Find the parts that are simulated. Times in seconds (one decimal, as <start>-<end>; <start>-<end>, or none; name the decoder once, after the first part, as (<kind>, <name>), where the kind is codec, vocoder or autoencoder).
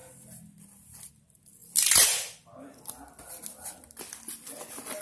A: none